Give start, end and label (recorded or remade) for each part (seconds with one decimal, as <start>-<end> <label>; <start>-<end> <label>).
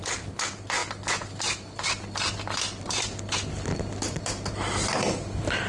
0.0-5.7 recorded